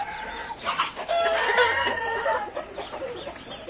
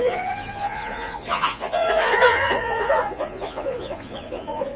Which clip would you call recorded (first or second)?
first